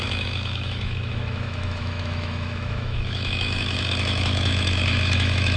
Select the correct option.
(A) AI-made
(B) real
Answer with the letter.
A